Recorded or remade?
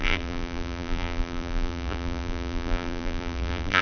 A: remade